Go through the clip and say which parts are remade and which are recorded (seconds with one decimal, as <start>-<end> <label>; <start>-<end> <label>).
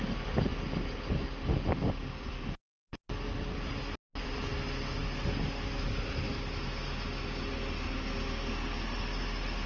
0.0-9.7 recorded